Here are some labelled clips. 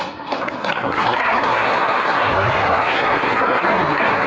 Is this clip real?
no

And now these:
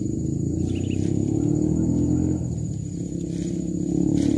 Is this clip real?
yes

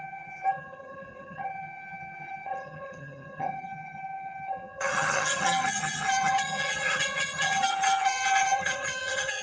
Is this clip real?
no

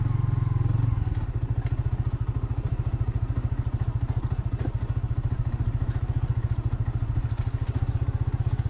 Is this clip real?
yes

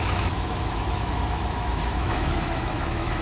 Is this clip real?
no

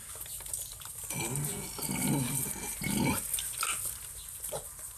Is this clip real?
yes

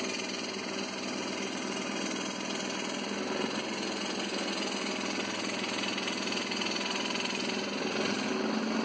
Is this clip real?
yes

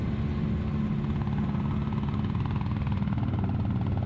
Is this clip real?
yes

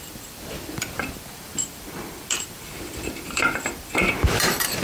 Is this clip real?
no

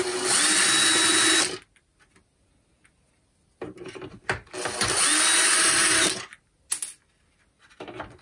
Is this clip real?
yes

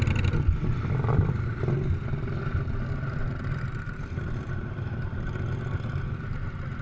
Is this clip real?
yes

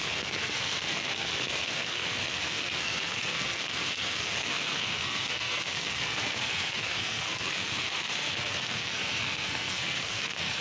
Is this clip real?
no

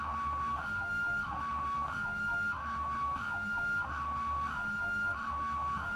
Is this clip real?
no